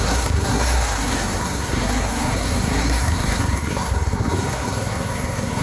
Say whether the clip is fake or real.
fake